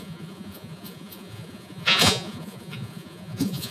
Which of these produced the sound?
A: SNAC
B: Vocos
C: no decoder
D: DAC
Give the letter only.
B